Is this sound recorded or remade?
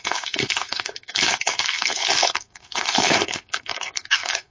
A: remade